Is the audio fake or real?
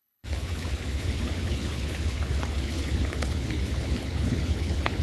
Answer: fake